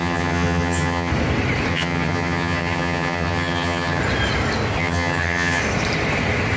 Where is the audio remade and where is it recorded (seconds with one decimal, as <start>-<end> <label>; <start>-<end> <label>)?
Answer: 0.0-1.1 remade; 1.1-1.7 recorded; 1.7-4.0 remade; 4.0-4.8 recorded; 4.8-5.6 remade; 5.6-6.6 recorded